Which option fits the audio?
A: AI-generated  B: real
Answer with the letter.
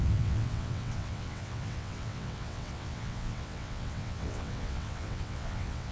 A